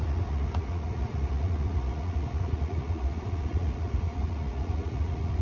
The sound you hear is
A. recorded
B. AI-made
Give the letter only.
B